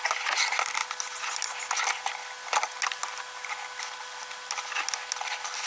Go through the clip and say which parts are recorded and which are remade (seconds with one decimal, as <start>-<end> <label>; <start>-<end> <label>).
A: 0.0-5.7 recorded